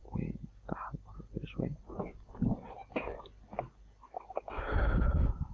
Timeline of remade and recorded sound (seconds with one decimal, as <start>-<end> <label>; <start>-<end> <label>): 0.0-5.5 recorded